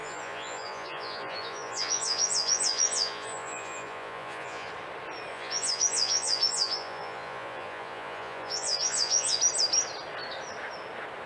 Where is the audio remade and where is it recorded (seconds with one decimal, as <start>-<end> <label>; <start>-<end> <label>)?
0.0-4.7 remade; 4.7-5.3 recorded; 5.3-9.4 remade; 9.4-11.3 recorded